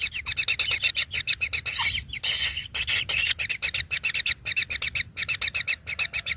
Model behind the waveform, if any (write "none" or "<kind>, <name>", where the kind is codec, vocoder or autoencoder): none